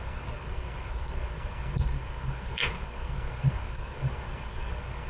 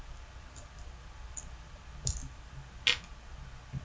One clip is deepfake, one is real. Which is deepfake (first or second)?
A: first